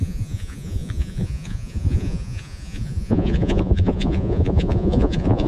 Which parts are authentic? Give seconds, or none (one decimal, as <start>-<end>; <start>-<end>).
none